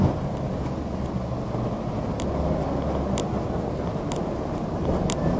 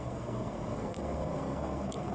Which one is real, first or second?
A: first